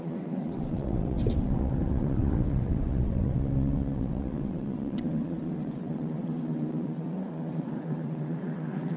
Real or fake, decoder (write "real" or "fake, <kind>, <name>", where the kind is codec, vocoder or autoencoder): fake, vocoder, WaveNeXt